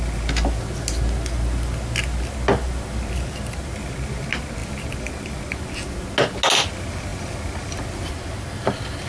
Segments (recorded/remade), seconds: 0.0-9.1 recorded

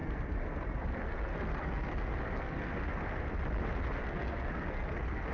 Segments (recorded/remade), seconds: 0.0-3.2 remade; 3.2-4.0 recorded; 4.0-5.3 remade

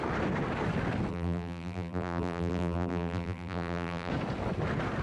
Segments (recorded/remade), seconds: 0.0-1.1 recorded; 1.1-4.1 remade; 4.1-5.0 recorded

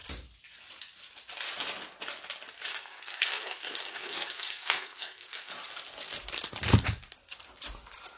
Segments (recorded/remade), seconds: 0.0-2.7 recorded; 2.7-5.5 remade; 5.5-8.2 recorded

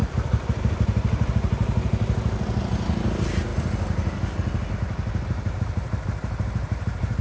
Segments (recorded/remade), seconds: 0.0-7.2 recorded

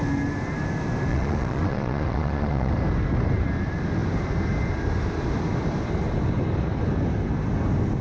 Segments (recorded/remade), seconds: 0.0-1.1 recorded; 1.1-2.7 remade; 2.7-8.0 recorded

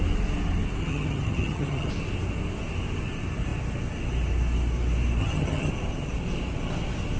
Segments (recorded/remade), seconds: 0.0-0.8 recorded; 0.8-1.9 remade; 1.9-5.2 recorded; 5.2-5.7 remade; 5.7-7.2 recorded